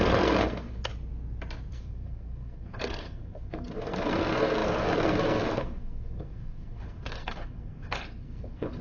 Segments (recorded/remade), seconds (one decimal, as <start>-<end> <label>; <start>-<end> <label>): 0.0-0.9 remade; 0.9-1.7 recorded; 1.7-8.8 remade